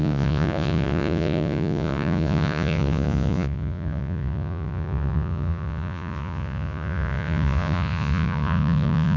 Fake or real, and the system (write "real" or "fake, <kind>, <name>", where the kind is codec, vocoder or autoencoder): fake, vocoder, Vocos